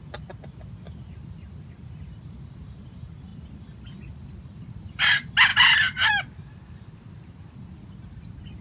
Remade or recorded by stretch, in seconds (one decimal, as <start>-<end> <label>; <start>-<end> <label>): 0.0-8.6 recorded